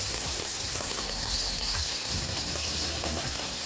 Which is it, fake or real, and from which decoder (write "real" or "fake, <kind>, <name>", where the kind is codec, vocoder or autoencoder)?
fake, codec, SNAC